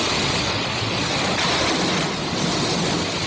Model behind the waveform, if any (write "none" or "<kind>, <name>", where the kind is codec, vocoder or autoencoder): none